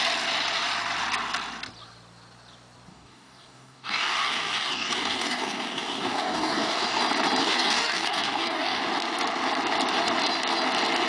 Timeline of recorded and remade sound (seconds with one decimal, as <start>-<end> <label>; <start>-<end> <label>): 0.0-2.9 recorded; 2.9-7.0 remade; 7.0-7.4 recorded; 7.4-8.8 remade; 8.8-11.1 recorded